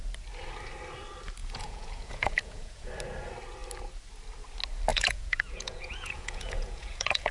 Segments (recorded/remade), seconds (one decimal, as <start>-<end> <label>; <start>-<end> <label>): 0.0-1.4 recorded; 1.4-2.9 remade; 2.9-4.9 recorded; 4.9-7.3 remade